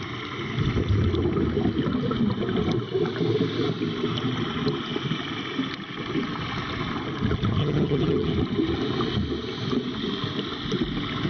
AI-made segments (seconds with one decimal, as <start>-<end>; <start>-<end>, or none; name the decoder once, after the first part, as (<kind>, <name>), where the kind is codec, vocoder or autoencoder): 7.6-8.3 (vocoder, HiFi-GAN)